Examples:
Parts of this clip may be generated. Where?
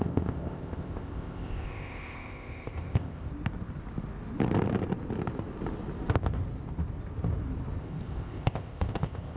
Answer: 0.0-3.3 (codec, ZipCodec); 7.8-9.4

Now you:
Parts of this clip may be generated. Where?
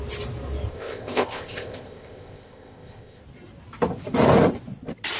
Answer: 0.7-3.2 (codec, ZipCodec)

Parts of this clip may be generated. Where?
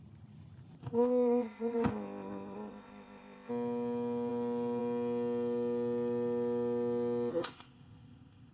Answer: 0.8-3.5 (codec, ZipCodec); 7.3-8.5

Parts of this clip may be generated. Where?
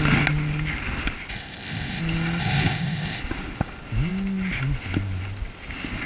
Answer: 1.3-2.0 (codec, ZipCodec); 2.4-3.2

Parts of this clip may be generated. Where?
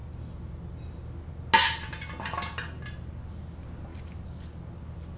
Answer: none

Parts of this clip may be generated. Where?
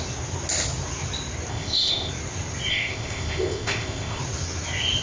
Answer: 1.5-2.1 (codec, ZipCodec); 2.7-4.2